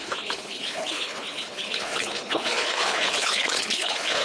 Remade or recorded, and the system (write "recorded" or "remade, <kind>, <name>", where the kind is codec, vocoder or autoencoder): remade, codec, HILCodec